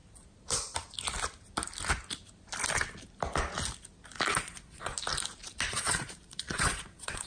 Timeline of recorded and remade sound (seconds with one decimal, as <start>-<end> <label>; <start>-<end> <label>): 0.0-4.4 recorded; 4.4-4.9 remade; 4.9-5.7 recorded; 5.7-7.3 remade